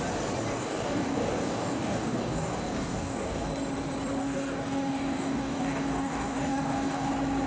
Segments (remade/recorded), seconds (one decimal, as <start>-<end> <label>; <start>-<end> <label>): 0.0-0.5 recorded; 0.5-3.5 remade; 3.5-4.2 recorded; 4.2-7.1 remade; 7.1-7.5 recorded